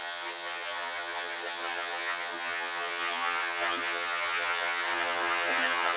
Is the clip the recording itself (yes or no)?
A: no